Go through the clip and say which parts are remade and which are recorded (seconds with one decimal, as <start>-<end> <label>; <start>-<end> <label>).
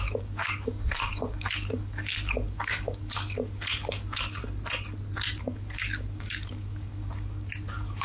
0.0-4.4 remade; 4.4-5.4 recorded; 5.4-8.0 remade